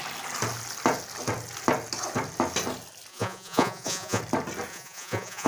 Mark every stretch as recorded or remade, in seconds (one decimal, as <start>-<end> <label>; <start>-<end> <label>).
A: 0.0-3.1 recorded; 3.1-4.2 remade; 4.2-4.7 recorded; 4.7-5.5 remade